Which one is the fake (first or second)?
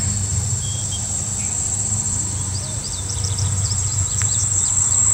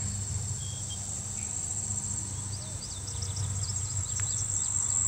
first